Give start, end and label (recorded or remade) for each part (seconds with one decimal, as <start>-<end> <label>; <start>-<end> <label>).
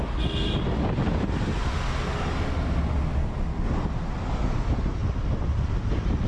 0.0-6.3 recorded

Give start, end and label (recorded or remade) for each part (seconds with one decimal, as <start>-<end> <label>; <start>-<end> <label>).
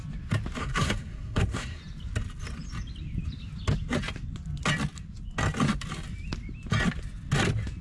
0.0-0.6 recorded; 0.6-1.8 remade; 1.8-7.8 recorded